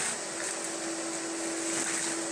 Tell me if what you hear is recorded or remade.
recorded